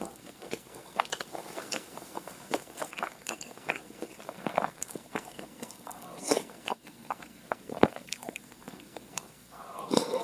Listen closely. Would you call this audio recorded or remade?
remade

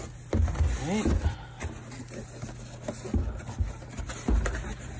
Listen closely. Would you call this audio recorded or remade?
recorded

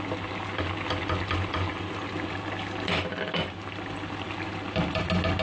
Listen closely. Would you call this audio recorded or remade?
recorded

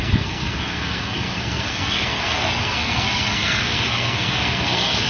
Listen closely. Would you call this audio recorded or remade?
remade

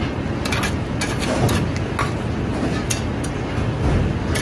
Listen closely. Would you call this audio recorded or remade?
recorded